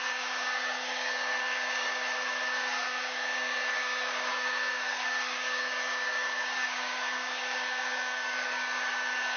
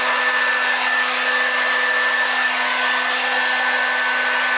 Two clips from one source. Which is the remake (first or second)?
first